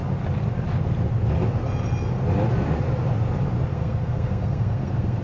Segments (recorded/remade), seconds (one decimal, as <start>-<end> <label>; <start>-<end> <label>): 0.0-3.7 recorded; 3.7-5.2 remade